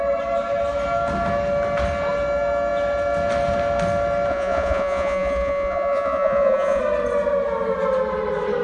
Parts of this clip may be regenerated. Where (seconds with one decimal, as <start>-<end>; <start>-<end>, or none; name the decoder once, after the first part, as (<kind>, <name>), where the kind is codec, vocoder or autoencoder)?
4.3-6.8 (vocoder, Vocos)